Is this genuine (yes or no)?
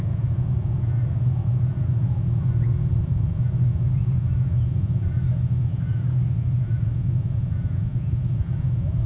no